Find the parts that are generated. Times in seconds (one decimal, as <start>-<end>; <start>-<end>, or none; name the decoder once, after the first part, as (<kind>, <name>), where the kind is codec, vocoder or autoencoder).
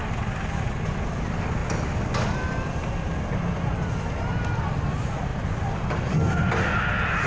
none